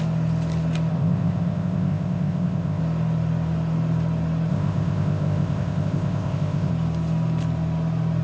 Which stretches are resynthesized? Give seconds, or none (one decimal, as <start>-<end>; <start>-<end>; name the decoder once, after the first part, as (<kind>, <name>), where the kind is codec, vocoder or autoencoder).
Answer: 0.9-2.8 (codec, ZipCodec); 4.5-6.7